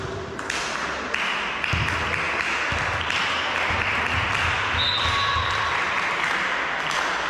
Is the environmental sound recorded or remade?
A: recorded